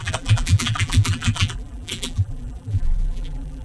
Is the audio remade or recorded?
remade